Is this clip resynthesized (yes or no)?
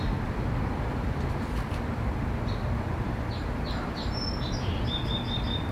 yes